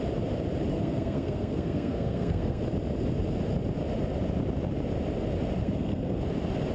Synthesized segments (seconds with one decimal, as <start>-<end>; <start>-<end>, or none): 0.7-2.6; 5.6-6.2